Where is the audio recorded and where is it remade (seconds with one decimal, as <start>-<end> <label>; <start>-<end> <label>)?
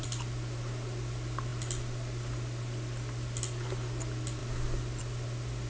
0.0-5.7 recorded